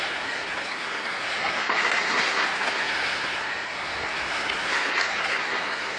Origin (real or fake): fake